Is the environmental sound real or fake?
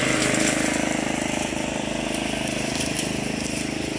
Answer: real